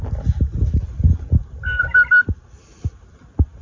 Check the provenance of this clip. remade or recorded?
recorded